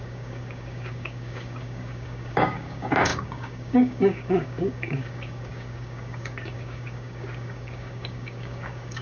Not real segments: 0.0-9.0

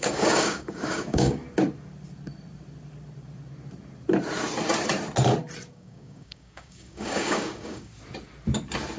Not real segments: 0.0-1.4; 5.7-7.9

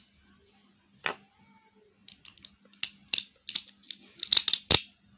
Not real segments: none

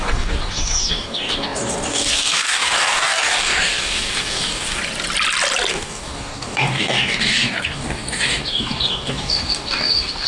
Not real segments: 0.0-4.8; 5.7-10.3

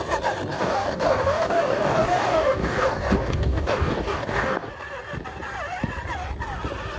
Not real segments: 0.5-4.7

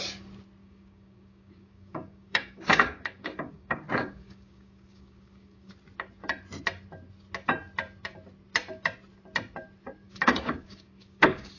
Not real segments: 0.6-5.7; 10.0-11.6

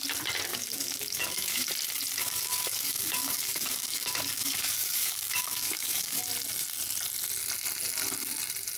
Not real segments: 0.5-1.7; 2.2-6.2

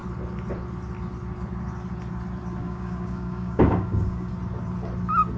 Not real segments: 2.6-4.3